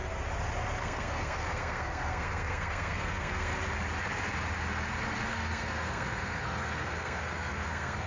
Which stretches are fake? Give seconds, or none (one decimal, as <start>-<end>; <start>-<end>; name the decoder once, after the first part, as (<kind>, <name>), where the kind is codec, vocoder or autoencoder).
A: 0.8-3.5 (codec, SNAC); 5.3-8.1